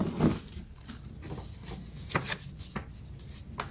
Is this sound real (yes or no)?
yes